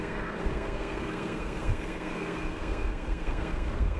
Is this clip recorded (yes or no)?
no